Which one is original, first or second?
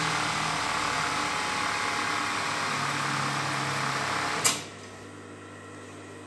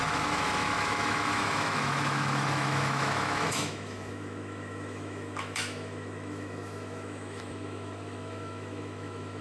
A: first